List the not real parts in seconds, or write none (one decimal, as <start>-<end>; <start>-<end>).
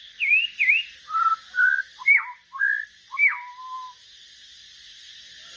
none